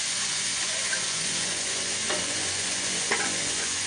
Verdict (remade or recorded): remade